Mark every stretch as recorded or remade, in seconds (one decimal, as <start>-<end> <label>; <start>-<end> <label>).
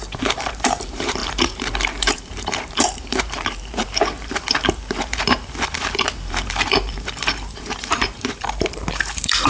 0.0-9.5 remade